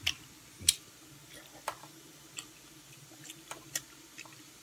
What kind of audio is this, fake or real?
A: real